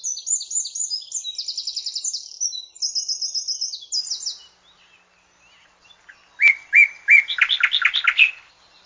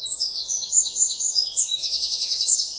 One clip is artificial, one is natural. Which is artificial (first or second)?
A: second